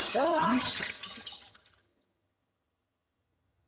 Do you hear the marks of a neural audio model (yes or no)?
yes